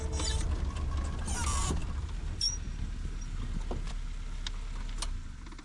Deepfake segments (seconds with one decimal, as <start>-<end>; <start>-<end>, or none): none